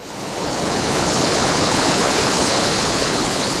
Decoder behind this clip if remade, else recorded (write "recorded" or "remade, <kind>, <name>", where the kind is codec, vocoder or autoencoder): remade, codec, HILCodec